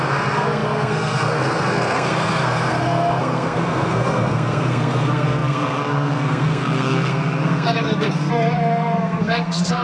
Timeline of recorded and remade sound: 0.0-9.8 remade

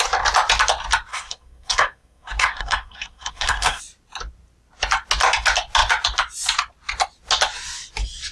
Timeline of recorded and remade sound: 0.0-1.1 recorded; 1.1-3.8 remade; 3.8-8.3 recorded

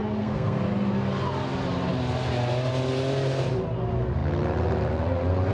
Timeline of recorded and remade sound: 0.0-0.6 remade; 0.6-5.5 recorded

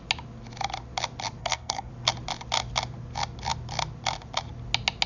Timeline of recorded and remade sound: 0.0-1.4 recorded; 1.4-1.9 remade; 1.9-5.1 recorded

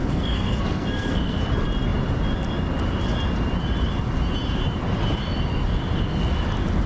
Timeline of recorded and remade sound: 0.0-1.4 remade; 1.4-6.9 recorded